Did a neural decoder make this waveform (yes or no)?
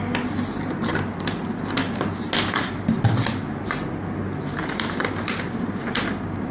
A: no